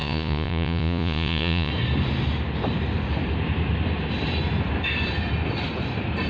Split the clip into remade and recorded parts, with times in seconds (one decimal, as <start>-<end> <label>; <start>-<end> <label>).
0.0-1.7 remade; 1.7-6.3 recorded